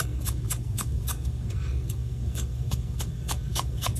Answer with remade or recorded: remade